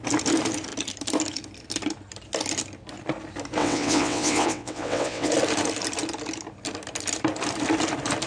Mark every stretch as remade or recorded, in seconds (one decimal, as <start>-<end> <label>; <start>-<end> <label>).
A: 0.0-3.6 recorded; 3.6-5.3 remade; 5.3-8.3 recorded